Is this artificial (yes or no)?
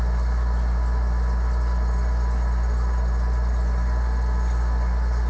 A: no